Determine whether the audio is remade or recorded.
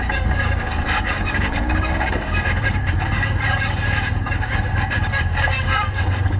remade